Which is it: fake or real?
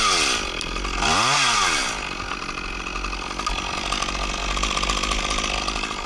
real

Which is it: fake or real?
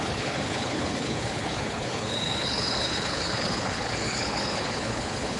fake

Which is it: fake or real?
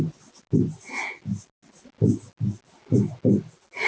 real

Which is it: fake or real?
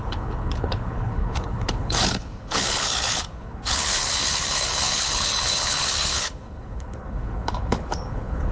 fake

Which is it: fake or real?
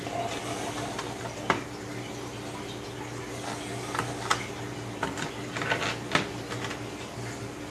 real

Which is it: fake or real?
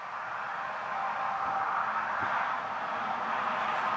real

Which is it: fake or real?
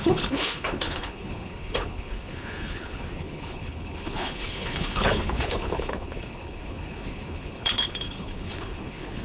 fake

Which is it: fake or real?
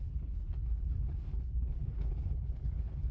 fake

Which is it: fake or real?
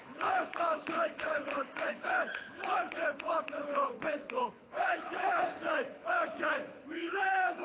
fake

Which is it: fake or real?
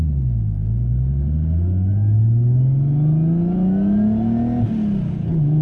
real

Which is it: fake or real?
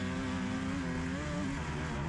real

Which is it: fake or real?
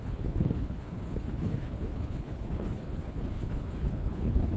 fake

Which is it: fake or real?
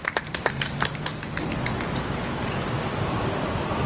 real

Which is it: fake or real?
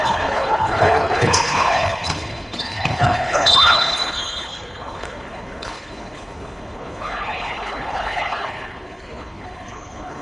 fake